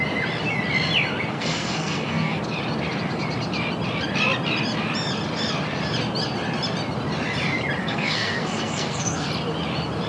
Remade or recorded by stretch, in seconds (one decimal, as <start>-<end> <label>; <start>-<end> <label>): 0.0-1.3 recorded; 1.3-2.4 remade; 2.4-7.8 recorded; 7.8-9.3 remade; 9.3-10.1 recorded